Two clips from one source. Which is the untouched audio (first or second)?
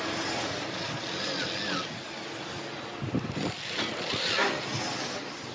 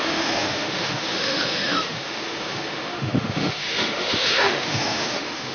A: first